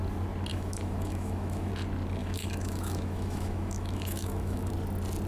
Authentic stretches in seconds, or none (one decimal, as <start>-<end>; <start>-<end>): 0.0-0.5; 1.7-2.2; 4.7-5.3